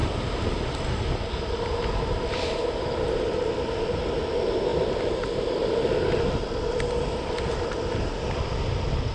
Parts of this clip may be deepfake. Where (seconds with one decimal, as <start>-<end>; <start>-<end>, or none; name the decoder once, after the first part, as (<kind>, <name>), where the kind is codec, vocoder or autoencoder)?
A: none